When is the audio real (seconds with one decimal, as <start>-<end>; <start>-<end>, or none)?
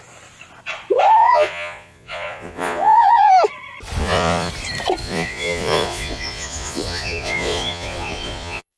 0.0-1.2; 3.3-4.0; 4.5-5.0